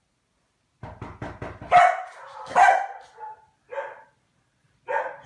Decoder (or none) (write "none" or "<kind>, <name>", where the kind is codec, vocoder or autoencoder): none